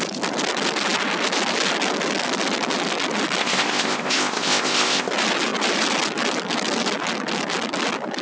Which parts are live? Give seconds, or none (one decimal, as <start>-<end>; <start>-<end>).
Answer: 0.0-3.4; 5.1-8.2